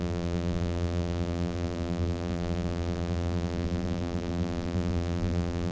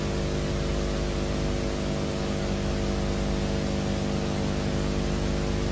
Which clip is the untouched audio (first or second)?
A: second